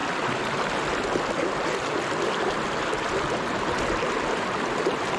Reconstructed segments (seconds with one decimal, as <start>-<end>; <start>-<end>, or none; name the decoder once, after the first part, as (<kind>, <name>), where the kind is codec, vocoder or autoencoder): none